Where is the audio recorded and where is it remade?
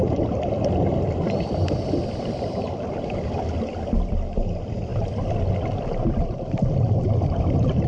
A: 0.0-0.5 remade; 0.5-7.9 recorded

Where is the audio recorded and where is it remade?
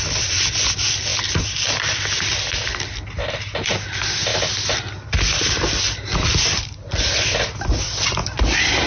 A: 0.0-8.9 recorded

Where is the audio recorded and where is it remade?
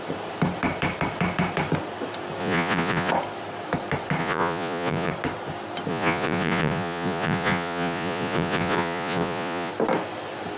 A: 0.0-2.4 recorded; 2.4-3.1 remade; 3.1-4.2 recorded; 4.2-5.1 remade; 5.1-5.9 recorded; 5.9-9.7 remade; 9.7-10.6 recorded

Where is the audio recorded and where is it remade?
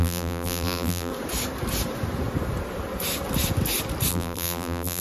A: 0.0-1.1 remade; 1.1-4.1 recorded; 4.1-5.0 remade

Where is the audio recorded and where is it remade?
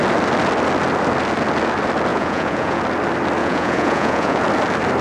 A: 0.0-2.1 recorded; 2.1-2.8 remade; 2.8-3.4 recorded; 3.4-4.4 remade; 4.4-5.0 recorded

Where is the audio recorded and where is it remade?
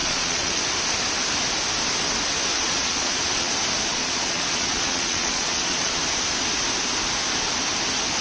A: 0.0-0.6 remade; 0.6-2.5 recorded; 2.5-3.5 remade; 3.5-3.9 recorded; 3.9-6.0 remade; 6.0-8.2 recorded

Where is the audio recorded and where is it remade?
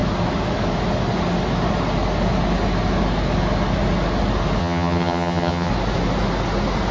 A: 0.0-4.6 recorded; 4.6-5.7 remade; 5.7-6.9 recorded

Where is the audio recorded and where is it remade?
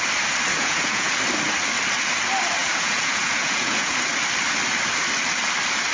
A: 0.0-0.5 recorded; 0.5-1.2 remade; 1.2-2.6 recorded; 2.6-4.0 remade; 4.0-5.9 recorded